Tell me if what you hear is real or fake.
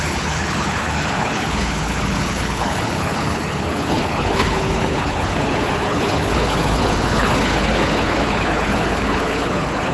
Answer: fake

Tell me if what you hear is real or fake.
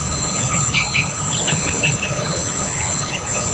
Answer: fake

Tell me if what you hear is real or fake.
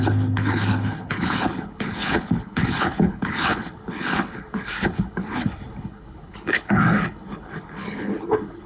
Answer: fake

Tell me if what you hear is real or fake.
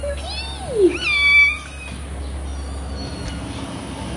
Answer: real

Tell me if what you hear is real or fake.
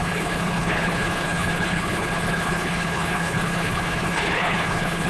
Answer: fake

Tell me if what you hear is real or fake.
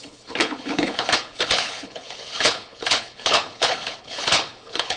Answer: fake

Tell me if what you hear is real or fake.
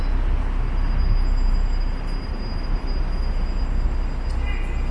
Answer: real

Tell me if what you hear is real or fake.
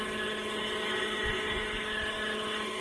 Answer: fake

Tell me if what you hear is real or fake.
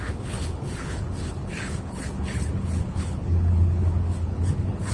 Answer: fake